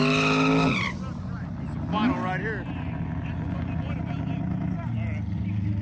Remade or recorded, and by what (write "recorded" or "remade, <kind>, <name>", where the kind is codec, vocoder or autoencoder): recorded